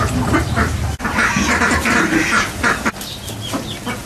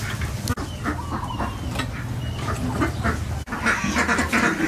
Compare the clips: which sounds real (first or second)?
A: second